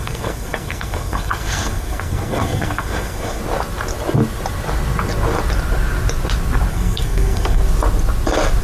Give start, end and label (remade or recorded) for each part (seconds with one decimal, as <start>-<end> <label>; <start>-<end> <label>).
0.0-3.4 remade; 3.4-6.7 recorded; 6.7-7.6 remade; 7.6-8.6 recorded